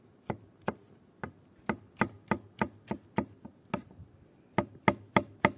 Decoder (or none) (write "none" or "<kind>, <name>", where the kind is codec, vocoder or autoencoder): none